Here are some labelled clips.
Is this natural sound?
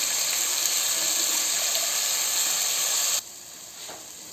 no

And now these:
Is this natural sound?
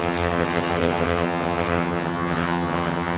no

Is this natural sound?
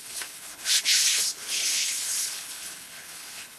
no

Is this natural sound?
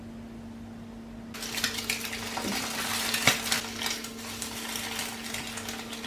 yes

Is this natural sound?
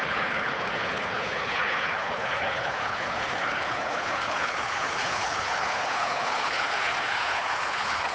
no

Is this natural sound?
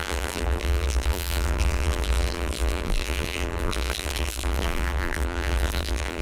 no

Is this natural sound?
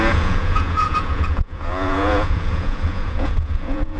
no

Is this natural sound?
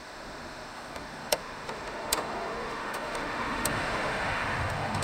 no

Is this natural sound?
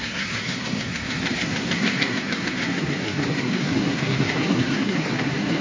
no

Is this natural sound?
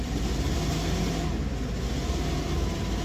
yes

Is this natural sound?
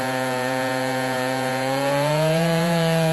no